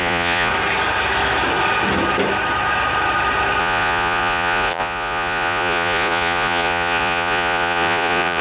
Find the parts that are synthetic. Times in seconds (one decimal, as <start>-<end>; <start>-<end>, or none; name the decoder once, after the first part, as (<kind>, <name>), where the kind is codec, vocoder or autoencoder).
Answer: 0.0-0.5 (vocoder, Vocos); 3.6-8.4